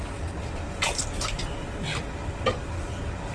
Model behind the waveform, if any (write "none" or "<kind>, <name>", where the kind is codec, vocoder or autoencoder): none